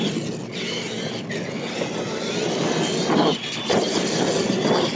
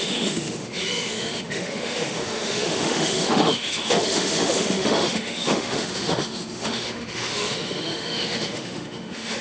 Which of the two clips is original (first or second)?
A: first